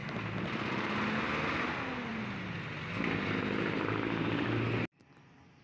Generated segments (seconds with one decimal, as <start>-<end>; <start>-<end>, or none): none